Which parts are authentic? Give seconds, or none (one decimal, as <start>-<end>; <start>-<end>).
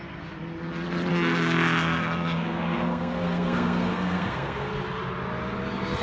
0.0-1.1; 4.7-6.0